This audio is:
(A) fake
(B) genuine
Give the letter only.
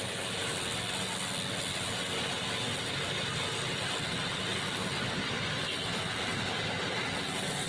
B